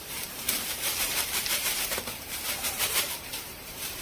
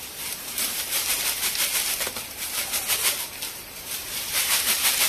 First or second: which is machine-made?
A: first